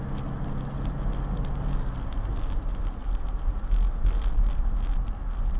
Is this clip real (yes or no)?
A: yes